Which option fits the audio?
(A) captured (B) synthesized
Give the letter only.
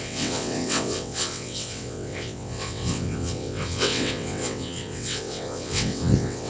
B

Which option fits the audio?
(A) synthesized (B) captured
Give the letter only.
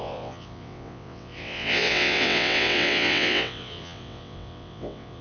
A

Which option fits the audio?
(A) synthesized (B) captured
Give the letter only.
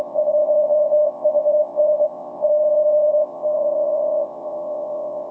A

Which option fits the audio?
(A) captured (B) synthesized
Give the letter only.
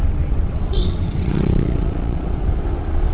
B